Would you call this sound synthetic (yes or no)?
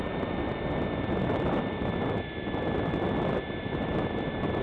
yes